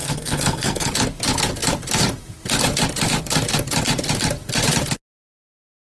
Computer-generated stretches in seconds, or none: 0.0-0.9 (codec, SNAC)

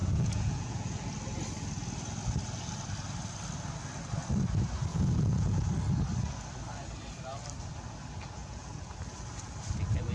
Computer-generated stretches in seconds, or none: 0.0-1.0 (vocoder, Vocos); 4.9-5.7; 8.4-9.0

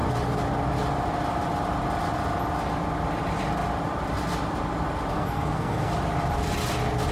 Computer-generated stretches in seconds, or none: 5.1-5.9 (codec, SNAC)

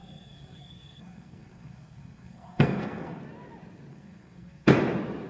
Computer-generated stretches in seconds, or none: 0.0-3.2 (codec, SNAC); 3.9-4.8